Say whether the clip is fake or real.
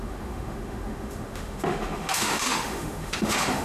fake